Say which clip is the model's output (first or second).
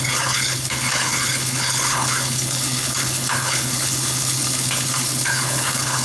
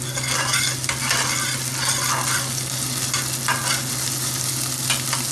first